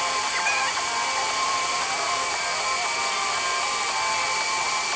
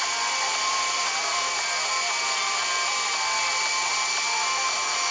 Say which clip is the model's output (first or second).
first